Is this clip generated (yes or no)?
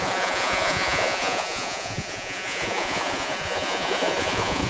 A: yes